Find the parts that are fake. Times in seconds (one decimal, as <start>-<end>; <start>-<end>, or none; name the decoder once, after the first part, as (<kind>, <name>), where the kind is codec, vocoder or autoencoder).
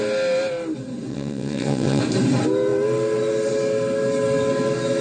1.1-2.0 (vocoder, WaveNeXt)